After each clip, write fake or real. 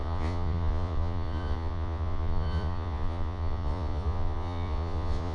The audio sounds fake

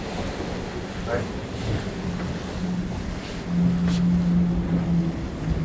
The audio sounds real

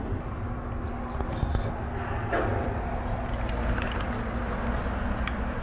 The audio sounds real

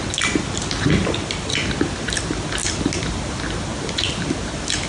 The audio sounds real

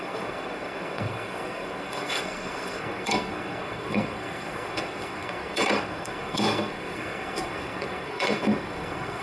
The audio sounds fake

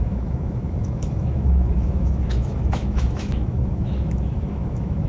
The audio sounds fake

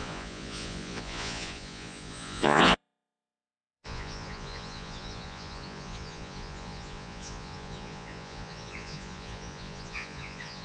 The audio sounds fake